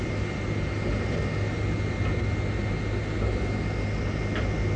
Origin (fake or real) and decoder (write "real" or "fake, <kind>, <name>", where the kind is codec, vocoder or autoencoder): real